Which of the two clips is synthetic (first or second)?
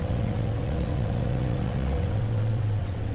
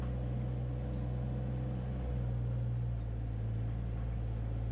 first